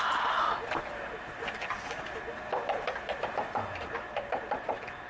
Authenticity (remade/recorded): recorded